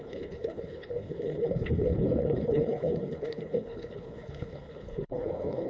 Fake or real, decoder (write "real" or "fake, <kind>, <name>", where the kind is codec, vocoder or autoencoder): fake, codec, HILCodec